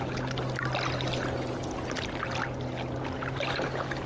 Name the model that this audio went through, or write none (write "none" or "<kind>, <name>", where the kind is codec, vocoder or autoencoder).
none